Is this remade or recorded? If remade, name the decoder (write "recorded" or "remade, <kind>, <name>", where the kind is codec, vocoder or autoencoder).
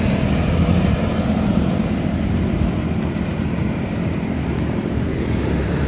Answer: remade, vocoder, BigVGAN v2